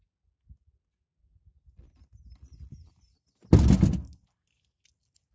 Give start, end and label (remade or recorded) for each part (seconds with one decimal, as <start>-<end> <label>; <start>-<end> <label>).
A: 0.0-5.3 recorded